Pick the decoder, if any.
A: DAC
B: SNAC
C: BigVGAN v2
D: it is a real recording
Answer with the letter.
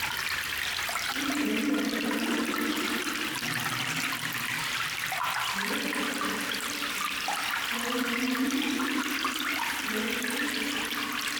D